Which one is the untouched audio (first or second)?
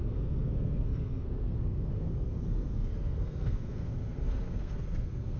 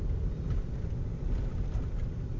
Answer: second